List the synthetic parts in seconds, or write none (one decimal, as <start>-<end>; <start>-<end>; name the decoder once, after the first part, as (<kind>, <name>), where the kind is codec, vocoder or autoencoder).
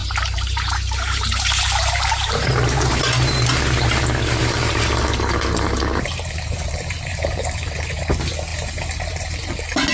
0.0-3.0 (vocoder, BigVGAN v2); 4.4-8.0; 8.5-9.5